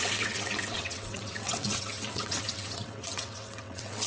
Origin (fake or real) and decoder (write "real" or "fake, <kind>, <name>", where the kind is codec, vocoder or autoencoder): fake, vocoder, WaveNeXt